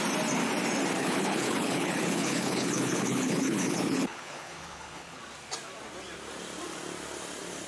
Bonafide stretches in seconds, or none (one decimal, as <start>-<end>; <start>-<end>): 0.0-1.0; 5.2-7.7